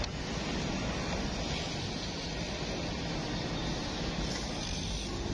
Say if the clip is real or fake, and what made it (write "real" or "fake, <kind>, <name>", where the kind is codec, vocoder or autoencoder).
real